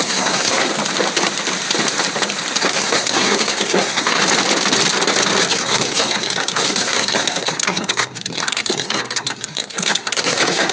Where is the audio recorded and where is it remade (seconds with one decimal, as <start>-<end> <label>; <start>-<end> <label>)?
0.0-0.7 remade; 0.7-2.6 recorded; 2.6-4.2 remade; 4.2-5.5 recorded; 5.5-10.7 remade